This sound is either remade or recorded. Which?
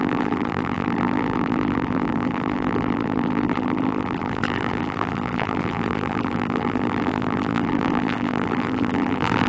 remade